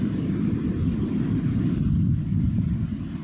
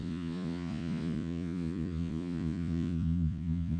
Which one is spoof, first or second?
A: second